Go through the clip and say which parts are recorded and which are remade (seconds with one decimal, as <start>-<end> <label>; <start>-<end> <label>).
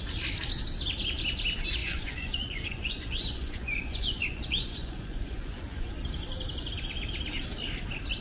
0.0-1.8 recorded; 1.8-5.9 remade; 5.9-8.2 recorded